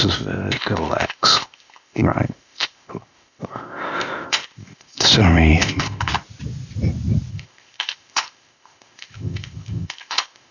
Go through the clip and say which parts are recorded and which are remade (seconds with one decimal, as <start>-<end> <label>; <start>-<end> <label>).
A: 0.0-6.1 remade; 6.1-7.3 recorded; 7.3-10.5 remade

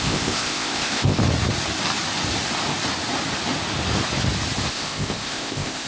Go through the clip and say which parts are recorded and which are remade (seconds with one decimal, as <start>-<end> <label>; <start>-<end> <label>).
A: 0.0-1.2 remade; 1.2-4.7 recorded; 4.7-5.9 remade

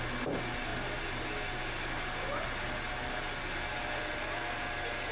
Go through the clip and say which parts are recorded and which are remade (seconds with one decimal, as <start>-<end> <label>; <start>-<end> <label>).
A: 0.0-5.1 recorded

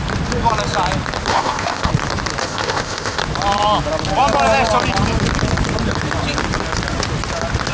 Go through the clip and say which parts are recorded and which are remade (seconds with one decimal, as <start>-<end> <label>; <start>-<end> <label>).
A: 0.0-1.3 recorded; 1.3-1.9 remade; 1.9-2.4 recorded; 2.4-3.2 remade; 3.2-7.7 recorded

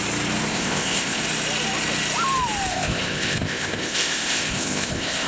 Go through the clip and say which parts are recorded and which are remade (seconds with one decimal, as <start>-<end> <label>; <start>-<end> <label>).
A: 0.0-0.5 recorded; 0.5-1.2 remade; 1.2-2.7 recorded; 2.7-5.3 remade